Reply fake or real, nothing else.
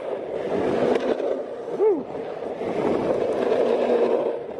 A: real